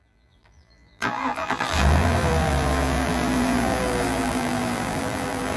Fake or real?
fake